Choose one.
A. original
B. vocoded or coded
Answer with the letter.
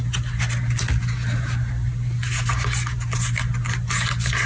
A